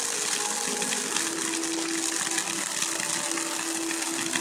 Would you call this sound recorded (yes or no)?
yes